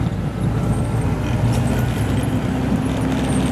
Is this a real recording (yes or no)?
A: yes